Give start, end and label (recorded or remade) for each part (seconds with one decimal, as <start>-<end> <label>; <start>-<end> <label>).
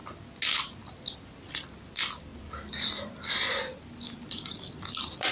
0.0-5.3 recorded